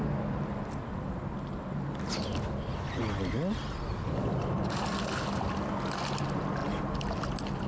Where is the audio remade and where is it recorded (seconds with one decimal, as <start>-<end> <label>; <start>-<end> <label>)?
0.0-7.7 recorded